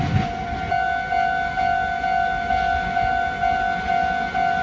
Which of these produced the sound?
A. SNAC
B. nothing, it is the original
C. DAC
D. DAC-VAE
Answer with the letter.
B